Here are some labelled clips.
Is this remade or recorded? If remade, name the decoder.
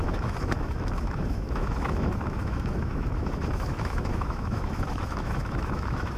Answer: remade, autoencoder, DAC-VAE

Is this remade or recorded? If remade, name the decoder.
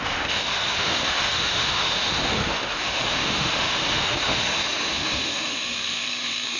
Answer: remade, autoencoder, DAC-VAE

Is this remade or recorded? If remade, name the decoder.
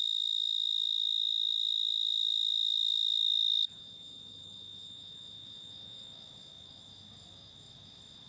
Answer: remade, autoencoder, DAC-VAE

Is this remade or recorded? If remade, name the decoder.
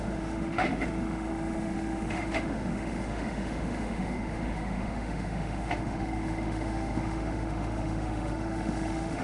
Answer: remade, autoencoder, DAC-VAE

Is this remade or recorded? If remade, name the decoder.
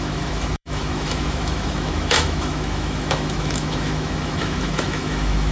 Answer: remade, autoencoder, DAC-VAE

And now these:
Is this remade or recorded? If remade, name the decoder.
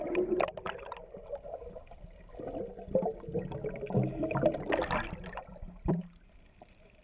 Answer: recorded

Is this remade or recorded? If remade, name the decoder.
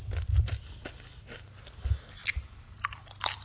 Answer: recorded